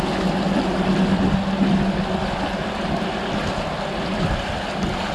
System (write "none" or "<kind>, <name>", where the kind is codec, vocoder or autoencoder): none